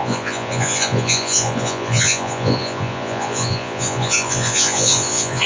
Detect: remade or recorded remade